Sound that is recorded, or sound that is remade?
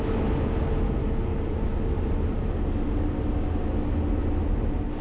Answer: recorded